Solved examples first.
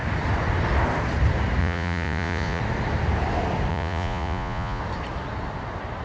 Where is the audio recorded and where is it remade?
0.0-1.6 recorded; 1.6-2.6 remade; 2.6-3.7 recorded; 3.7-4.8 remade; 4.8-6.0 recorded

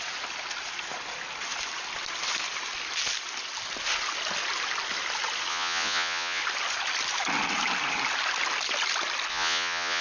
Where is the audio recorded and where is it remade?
0.0-5.5 recorded; 5.5-6.4 remade; 6.4-9.3 recorded; 9.3-10.0 remade

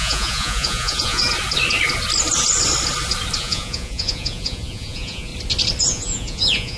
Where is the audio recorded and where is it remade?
0.0-1.2 remade; 1.2-3.4 recorded; 3.4-5.3 remade; 5.3-5.8 recorded; 5.8-6.8 remade

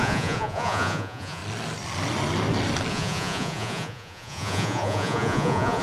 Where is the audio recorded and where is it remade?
0.0-1.4 remade; 1.4-2.9 recorded; 2.9-5.8 remade

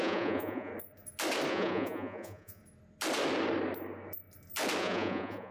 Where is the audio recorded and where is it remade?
0.0-0.7 remade; 0.7-1.5 recorded; 1.5-2.6 remade; 2.6-4.8 recorded; 4.8-5.5 remade